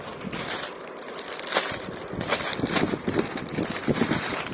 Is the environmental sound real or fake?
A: fake